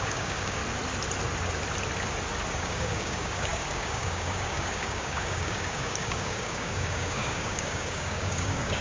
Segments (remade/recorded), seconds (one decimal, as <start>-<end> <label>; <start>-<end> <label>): 0.0-0.6 remade; 0.6-2.5 recorded; 2.5-8.8 remade

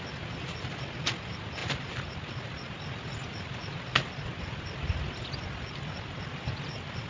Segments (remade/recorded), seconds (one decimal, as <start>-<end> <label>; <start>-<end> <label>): 0.0-7.1 recorded

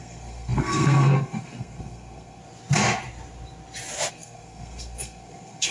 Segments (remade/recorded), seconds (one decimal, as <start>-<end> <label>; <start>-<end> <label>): 0.0-2.4 remade; 2.4-4.1 recorded; 4.1-5.7 remade

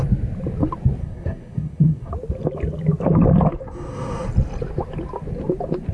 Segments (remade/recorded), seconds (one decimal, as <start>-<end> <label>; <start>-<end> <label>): 0.0-1.0 recorded; 1.0-2.1 remade; 2.1-5.9 recorded

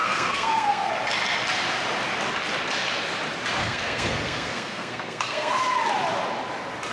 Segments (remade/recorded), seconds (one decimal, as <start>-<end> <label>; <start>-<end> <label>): 0.0-0.9 remade; 0.9-3.6 recorded; 3.6-5.5 remade; 5.5-6.9 recorded

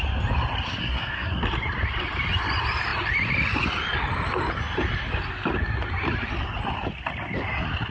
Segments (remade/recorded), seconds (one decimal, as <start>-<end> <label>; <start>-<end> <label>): 0.0-0.8 recorded; 0.8-1.4 remade; 1.4-7.9 recorded

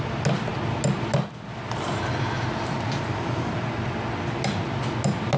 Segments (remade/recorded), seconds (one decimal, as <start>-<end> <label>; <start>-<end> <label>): 0.0-5.4 recorded

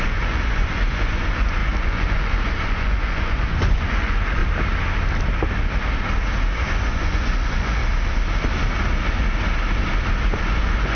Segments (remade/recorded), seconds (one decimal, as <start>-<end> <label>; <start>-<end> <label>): 0.0-4.4 remade; 4.4-6.7 recorded; 6.7-7.8 remade; 7.8-10.4 recorded; 10.4-10.9 remade